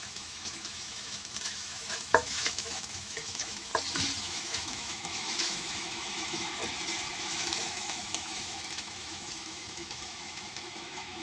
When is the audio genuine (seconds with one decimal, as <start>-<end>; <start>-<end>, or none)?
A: 3.7-4.2; 6.6-7.2